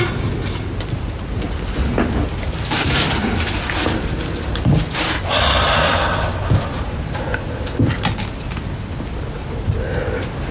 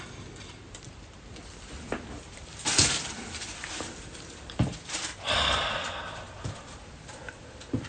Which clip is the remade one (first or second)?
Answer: second